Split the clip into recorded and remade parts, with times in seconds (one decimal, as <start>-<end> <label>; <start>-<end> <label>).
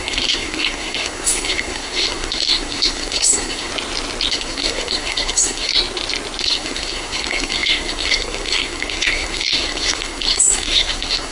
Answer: 0.0-3.7 remade; 3.7-4.3 recorded; 4.3-5.7 remade; 5.7-6.4 recorded; 6.4-11.3 remade